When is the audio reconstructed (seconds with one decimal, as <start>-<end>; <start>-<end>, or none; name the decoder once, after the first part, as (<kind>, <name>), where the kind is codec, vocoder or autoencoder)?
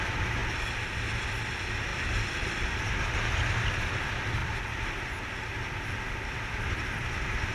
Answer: none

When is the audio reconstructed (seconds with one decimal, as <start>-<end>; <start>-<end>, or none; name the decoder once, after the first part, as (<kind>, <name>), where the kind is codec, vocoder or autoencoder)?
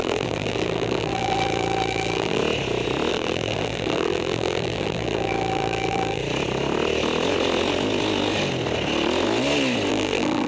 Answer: 0.0-2.4 (vocoder, BigVGAN v2); 3.1-6.2; 9.9-10.5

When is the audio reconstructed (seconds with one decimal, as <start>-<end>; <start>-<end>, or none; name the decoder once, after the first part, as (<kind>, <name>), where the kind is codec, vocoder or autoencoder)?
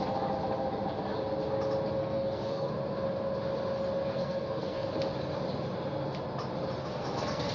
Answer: 2.0-2.7 (codec, SNAC); 4.1-4.9; 6.8-7.5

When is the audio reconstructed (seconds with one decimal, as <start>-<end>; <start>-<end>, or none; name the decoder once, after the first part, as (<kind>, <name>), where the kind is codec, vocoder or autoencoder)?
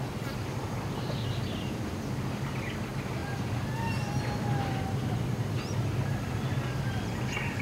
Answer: none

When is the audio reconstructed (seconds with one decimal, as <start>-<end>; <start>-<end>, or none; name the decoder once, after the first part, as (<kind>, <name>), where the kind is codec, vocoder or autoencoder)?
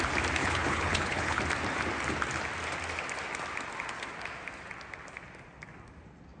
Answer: 0.4-1.4 (codec, HILCodec)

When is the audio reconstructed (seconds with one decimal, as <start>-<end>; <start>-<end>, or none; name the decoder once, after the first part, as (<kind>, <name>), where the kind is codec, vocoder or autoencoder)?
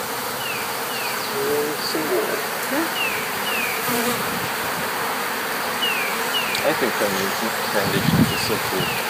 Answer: 2.0-5.0 (vocoder, BigVGAN v2)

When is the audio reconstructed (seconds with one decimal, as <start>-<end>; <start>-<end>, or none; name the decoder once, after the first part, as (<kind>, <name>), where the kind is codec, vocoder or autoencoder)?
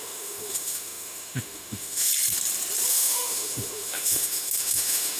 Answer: 0.0-2.1 (autoencoder, DAC-VAE); 2.9-5.2